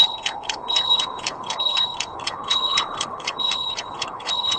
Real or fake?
fake